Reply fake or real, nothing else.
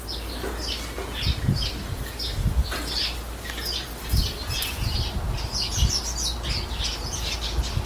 real